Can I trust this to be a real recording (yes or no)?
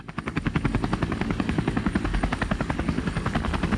no